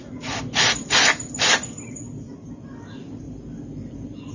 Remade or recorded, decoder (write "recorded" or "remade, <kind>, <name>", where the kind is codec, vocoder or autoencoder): recorded